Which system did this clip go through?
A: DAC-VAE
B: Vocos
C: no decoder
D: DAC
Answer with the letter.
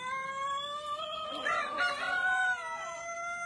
C